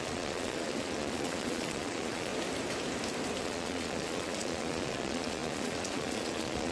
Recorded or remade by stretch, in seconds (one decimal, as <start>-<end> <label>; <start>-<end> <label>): 0.0-2.3 remade; 2.3-3.4 recorded; 3.4-6.7 remade